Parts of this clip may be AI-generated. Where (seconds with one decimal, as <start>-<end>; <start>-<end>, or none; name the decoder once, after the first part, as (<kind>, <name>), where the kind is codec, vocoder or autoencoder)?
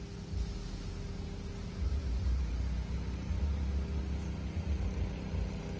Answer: 1.6-4.0 (vocoder, BigVGAN v2)